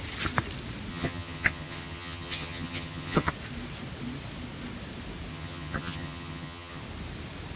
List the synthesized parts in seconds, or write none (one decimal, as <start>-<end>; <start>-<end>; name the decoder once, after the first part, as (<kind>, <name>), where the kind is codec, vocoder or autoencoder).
0.9-3.3 (vocoder, HiFi-GAN); 5.3-6.8